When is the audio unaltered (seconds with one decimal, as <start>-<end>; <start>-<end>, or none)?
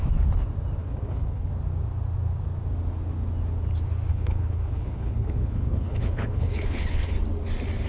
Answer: 0.0-0.8; 1.5-4.1; 7.1-7.9